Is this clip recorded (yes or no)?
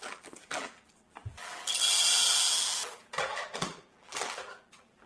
no